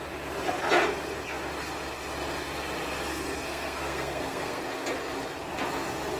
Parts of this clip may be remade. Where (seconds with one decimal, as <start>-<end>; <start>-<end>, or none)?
3.5-4.6